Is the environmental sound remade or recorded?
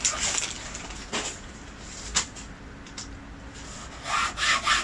recorded